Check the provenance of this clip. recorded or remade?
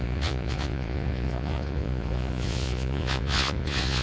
remade